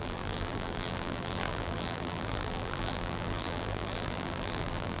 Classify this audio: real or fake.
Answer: fake